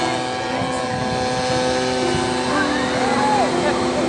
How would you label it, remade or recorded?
recorded